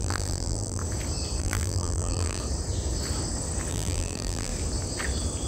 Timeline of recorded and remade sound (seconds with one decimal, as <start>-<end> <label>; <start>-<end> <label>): 0.0-0.8 remade; 0.8-1.4 recorded; 1.4-2.4 remade; 2.4-3.7 recorded; 3.7-4.5 remade; 4.5-5.5 recorded